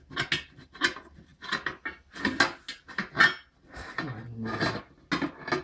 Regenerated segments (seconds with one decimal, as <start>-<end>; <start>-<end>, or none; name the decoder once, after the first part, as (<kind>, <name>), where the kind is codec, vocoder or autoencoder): none